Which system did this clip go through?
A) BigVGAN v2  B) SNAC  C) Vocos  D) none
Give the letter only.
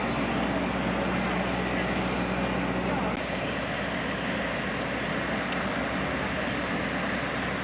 D